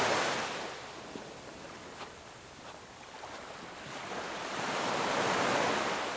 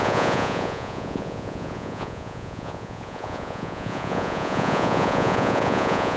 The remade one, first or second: second